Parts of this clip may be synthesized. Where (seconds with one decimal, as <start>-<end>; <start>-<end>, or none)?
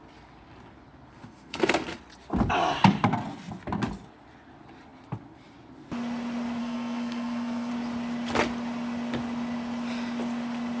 1.1-2.0; 6.6-7.7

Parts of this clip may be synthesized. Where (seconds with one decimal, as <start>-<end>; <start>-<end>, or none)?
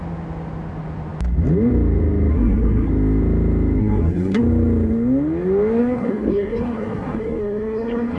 2.3-2.9; 3.8-4.4; 5.8-8.2